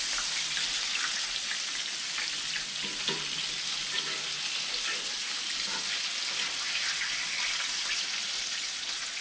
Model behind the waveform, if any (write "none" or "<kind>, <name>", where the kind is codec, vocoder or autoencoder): none